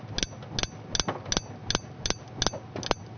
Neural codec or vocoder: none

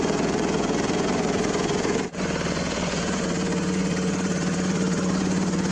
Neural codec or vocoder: vocoder, Vocos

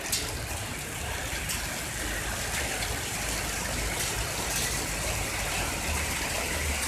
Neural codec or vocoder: none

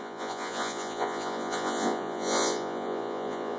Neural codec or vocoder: vocoder, Vocos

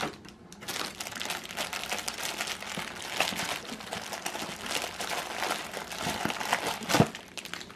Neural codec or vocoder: none